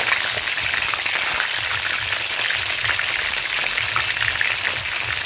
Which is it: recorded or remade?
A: recorded